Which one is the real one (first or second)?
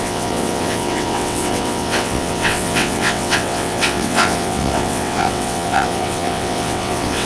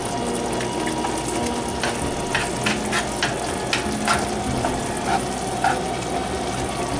second